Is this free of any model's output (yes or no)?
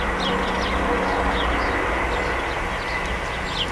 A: yes